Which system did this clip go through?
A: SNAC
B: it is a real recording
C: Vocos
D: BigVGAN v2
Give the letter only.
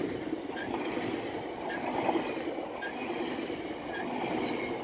B